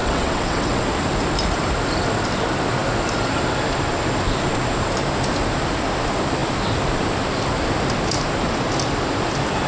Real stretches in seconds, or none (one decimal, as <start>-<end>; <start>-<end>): 0.8-9.7